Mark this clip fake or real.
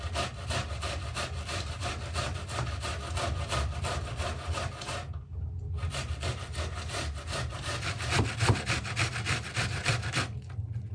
real